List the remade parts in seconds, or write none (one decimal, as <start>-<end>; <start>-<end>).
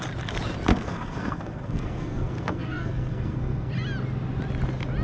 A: 0.7-3.7